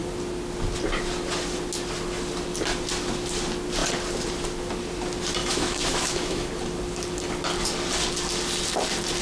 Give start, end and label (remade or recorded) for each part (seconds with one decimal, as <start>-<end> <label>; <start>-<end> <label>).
0.0-5.4 recorded; 5.4-6.5 remade; 6.5-9.2 recorded